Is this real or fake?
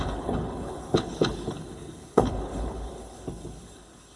fake